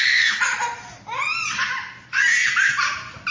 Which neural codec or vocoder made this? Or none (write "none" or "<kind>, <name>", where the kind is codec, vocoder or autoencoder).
none